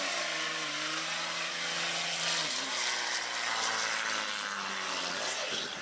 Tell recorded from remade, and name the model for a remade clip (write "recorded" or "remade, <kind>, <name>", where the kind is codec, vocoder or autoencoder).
recorded